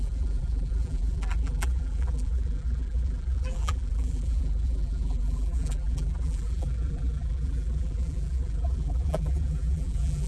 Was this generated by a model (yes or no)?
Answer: yes